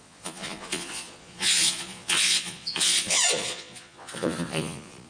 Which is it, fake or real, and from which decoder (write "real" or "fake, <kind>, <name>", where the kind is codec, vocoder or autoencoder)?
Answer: fake, vocoder, Vocos